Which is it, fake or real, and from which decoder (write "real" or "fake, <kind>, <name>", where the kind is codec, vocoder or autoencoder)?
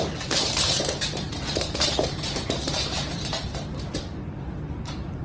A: fake, vocoder, BigVGAN v2